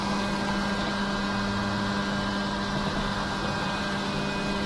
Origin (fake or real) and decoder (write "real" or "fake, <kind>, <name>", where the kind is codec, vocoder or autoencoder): real